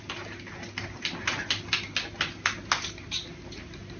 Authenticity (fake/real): real